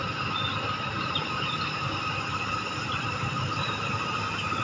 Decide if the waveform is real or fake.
fake